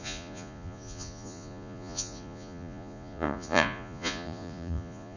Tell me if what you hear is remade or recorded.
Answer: remade